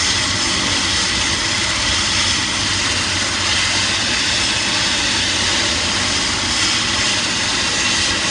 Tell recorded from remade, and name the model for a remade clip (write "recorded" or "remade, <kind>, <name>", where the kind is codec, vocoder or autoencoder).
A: recorded